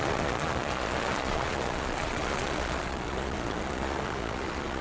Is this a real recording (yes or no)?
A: no